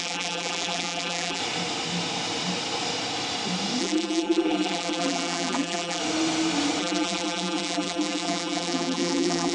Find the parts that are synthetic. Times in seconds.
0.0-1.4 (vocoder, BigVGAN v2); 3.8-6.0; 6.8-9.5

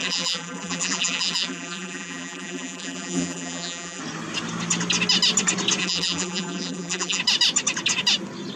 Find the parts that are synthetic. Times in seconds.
0.0-4.0 (vocoder, BigVGAN v2); 5.8-7.2

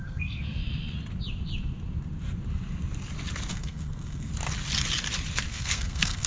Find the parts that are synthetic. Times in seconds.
0.0-0.6 (codec, SNAC); 3.5-4.3; 5.5-6.3

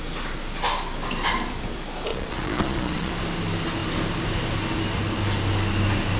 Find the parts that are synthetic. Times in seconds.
2.1-3.1 (vocoder, Vocos)

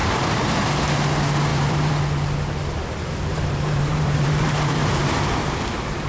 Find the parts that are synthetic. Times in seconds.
0.0-0.6 (vocoder, BigVGAN v2); 1.5-2.0; 3.3-5.0

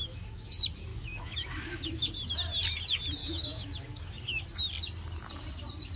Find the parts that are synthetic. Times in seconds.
0.0-0.5 (autoencoder, DAC-VAE); 0.9-2.1; 3.2-4.4

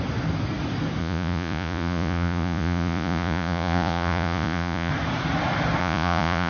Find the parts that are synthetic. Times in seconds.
1.0-4.9 (vocoder, Vocos); 5.8-6.5

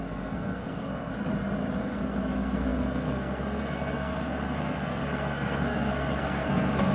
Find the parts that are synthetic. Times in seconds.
0.0-1.1 (codec, SNAC); 1.8-6.9